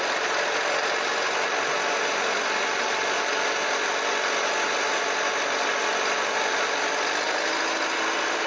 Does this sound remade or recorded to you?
recorded